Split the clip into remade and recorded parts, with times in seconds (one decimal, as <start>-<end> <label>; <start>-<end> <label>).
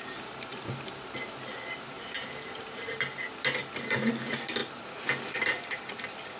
0.0-6.4 recorded